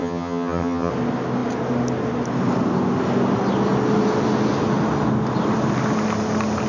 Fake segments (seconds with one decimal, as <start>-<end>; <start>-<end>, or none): 0.0-0.9